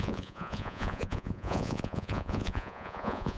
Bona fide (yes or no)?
no